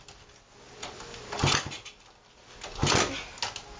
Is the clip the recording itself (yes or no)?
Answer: yes